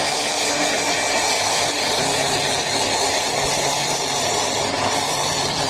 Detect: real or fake real